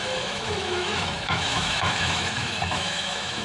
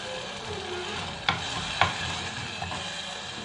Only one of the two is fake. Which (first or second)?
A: first